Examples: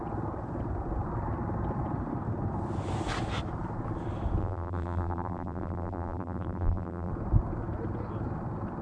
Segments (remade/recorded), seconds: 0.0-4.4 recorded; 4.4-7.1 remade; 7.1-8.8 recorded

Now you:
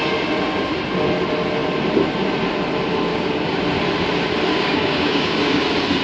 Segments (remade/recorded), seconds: 0.0-3.1 recorded; 3.1-3.6 remade; 3.6-4.5 recorded; 4.5-5.6 remade; 5.6-6.0 recorded